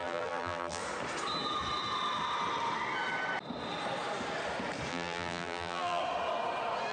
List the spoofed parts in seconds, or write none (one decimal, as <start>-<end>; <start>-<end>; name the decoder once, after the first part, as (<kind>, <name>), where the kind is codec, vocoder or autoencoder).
0.0-0.8 (vocoder, BigVGAN v2); 4.9-6.0